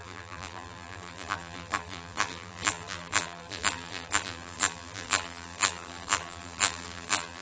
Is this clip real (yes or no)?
no